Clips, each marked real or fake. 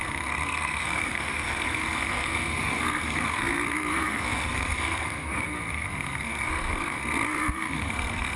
fake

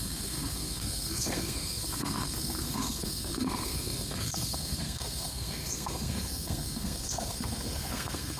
fake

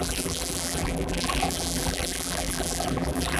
fake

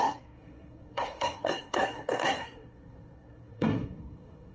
fake